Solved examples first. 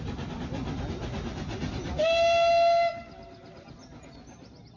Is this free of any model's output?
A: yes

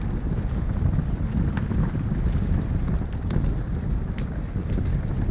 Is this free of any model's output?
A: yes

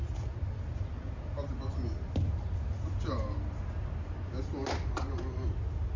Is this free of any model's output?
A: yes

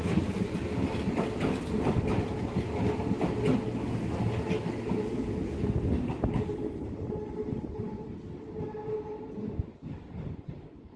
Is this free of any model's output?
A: yes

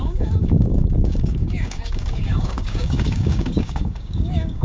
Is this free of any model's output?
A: no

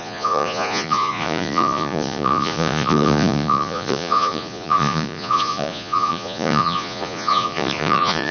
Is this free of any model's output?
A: no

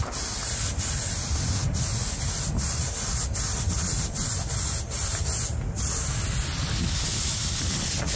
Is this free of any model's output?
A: yes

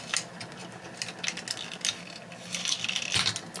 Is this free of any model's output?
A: yes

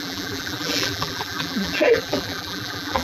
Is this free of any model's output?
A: no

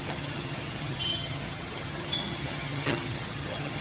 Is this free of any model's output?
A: no